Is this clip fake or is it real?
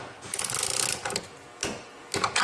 real